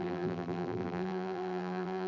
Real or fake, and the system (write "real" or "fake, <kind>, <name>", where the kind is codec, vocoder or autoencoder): fake, vocoder, BigVGAN v2